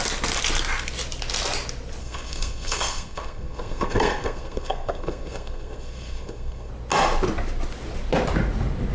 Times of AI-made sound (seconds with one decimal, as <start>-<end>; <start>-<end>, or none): 2.0-6.7